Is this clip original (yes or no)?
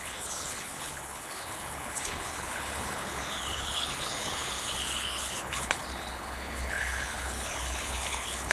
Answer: no